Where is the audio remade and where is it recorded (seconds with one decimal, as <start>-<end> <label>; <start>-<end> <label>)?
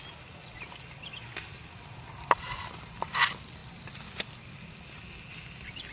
0.0-5.9 recorded